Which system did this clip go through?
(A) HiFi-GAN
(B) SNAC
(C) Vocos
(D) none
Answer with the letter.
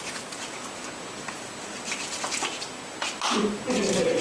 D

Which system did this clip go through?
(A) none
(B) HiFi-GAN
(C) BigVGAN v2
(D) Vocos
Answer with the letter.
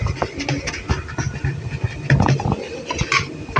A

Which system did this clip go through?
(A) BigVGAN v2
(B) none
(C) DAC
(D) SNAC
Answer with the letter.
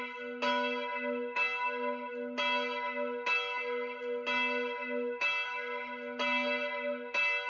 B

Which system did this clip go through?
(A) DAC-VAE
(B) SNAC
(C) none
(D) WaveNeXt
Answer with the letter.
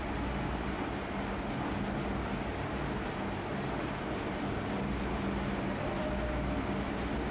C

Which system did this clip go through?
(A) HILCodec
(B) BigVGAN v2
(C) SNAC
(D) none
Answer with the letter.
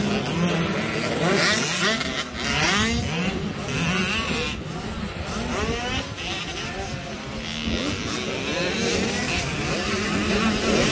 D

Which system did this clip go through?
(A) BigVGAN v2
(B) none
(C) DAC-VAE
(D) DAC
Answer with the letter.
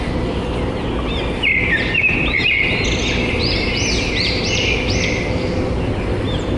B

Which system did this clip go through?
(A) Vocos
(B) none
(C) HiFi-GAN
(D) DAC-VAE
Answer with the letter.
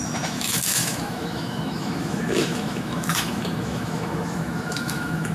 D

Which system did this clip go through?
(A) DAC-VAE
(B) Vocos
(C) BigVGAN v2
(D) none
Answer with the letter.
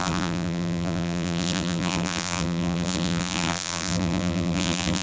C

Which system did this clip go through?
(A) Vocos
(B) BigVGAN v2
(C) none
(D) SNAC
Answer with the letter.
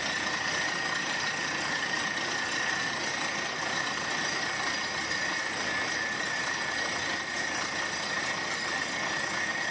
B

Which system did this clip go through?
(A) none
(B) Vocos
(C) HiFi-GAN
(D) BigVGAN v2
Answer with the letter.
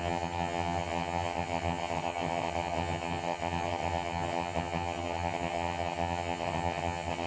C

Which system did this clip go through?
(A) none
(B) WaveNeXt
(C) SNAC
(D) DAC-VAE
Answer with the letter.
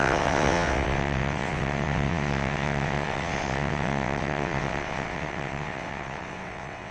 B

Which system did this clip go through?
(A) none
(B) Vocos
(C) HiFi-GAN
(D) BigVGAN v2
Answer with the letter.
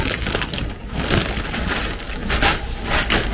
A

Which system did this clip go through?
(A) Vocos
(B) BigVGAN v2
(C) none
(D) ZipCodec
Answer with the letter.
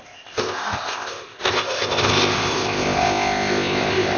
D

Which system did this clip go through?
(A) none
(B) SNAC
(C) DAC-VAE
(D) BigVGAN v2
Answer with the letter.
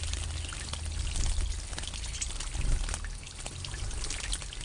A